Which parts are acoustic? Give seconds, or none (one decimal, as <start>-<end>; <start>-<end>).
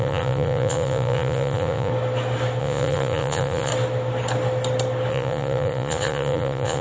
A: 1.9-2.6; 3.7-5.1